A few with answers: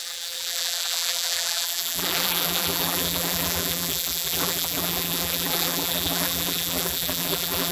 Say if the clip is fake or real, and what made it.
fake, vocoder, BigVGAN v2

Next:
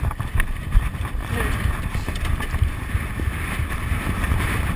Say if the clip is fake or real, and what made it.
fake, vocoder, BigVGAN v2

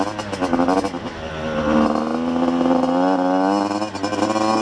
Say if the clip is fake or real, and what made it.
real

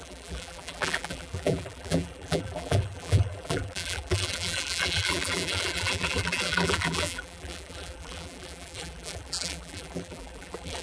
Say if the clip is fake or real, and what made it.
fake, vocoder, BigVGAN v2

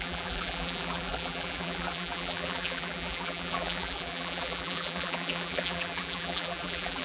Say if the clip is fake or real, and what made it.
fake, vocoder, BigVGAN v2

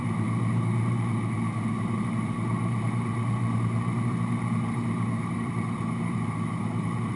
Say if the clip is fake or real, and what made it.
fake, vocoder, BigVGAN v2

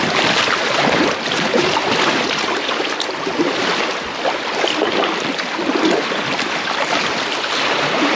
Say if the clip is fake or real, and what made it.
fake, vocoder, BigVGAN v2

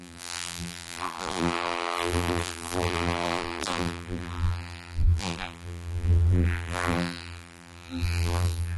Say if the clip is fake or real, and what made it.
fake, vocoder, BigVGAN v2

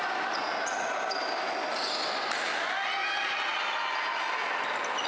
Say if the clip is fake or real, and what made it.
real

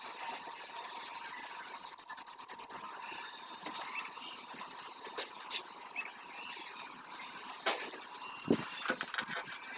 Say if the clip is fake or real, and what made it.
real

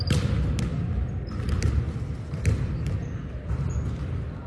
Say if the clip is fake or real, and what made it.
real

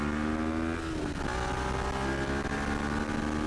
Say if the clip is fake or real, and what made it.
real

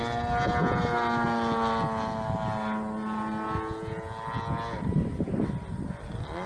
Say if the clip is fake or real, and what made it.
real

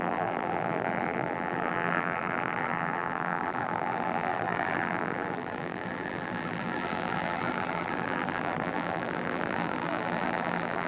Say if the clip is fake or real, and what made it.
fake, vocoder, BigVGAN v2